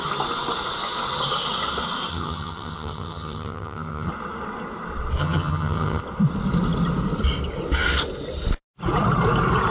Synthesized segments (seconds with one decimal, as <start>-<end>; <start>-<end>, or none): 2.1-4.1; 5.2-6.0